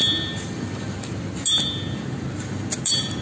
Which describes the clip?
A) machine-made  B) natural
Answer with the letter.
B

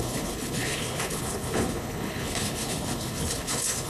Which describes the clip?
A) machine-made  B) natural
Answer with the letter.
A